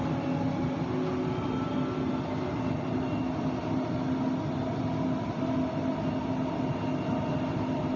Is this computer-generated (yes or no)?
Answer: no